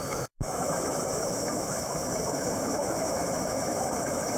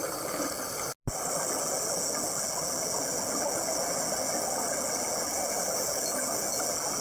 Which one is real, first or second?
second